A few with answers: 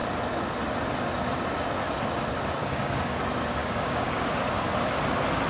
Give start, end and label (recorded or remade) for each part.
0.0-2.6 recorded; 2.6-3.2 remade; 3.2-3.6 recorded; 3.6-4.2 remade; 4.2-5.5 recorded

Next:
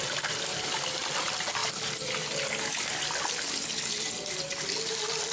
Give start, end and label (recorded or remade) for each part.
0.0-5.3 recorded

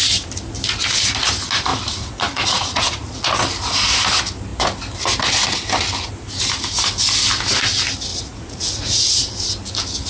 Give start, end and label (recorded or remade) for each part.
0.0-1.7 recorded; 1.7-3.3 remade; 3.3-8.1 recorded; 8.1-9.3 remade; 9.3-10.1 recorded

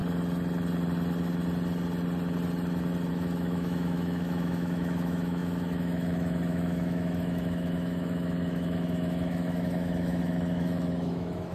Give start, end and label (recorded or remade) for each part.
0.0-3.1 recorded; 3.1-11.5 remade

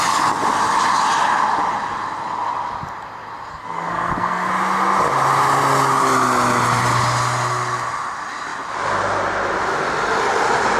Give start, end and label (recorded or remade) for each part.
0.0-3.5 recorded; 3.5-4.5 remade; 4.5-10.8 recorded

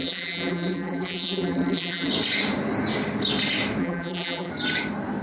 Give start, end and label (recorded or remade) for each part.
0.0-2.1 remade; 2.1-3.8 recorded; 3.8-4.5 remade; 4.5-5.2 recorded